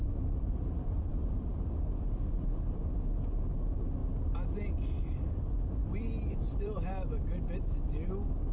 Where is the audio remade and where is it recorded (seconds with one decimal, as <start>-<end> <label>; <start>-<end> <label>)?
0.0-1.1 remade; 1.1-1.5 recorded; 1.5-2.8 remade; 2.8-5.8 recorded; 5.8-6.9 remade; 6.9-8.5 recorded